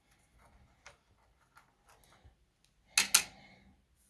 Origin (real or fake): real